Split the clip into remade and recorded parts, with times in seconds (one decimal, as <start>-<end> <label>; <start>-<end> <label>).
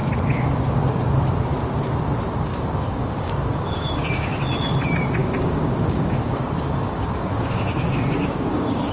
0.0-2.5 recorded; 2.5-4.4 remade; 4.4-5.2 recorded; 5.2-8.9 remade